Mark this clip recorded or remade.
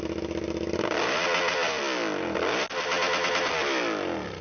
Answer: recorded